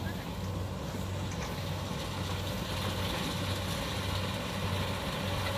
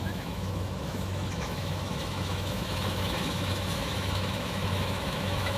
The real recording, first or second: first